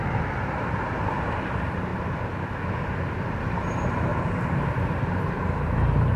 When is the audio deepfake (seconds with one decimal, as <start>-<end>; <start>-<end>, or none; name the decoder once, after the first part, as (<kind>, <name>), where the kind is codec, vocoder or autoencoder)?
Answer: 0.0-1.9 (vocoder, BigVGAN v2); 3.4-4.1; 4.9-6.2